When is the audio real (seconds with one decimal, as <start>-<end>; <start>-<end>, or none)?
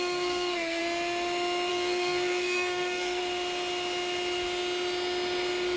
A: 0.8-1.7; 3.2-5.8